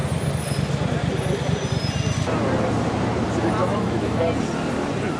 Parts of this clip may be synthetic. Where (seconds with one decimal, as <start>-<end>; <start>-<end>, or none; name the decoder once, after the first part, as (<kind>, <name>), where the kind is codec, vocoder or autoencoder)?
3.6-4.2 (autoencoder, DAC-VAE)